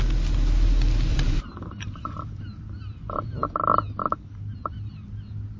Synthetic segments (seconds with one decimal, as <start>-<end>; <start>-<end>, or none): 1.1-3.6; 4.0-4.9